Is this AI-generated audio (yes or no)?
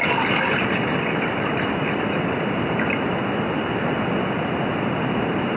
yes